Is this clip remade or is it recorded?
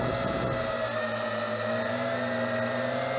recorded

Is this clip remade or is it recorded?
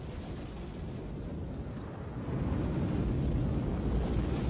recorded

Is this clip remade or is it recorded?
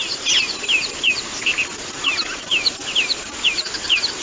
recorded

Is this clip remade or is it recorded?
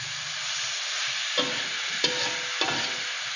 recorded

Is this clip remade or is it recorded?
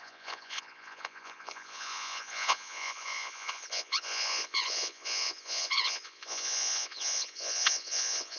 remade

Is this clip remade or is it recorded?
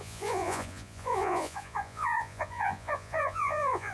remade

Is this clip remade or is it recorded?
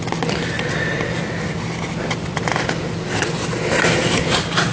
recorded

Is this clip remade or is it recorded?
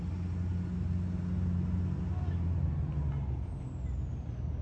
recorded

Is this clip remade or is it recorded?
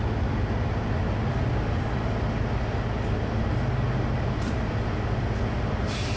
recorded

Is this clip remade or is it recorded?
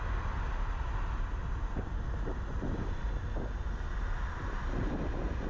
recorded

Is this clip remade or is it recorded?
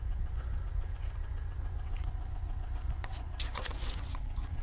remade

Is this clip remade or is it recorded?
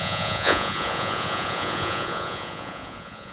remade